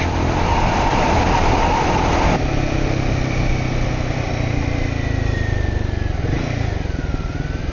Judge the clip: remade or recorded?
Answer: recorded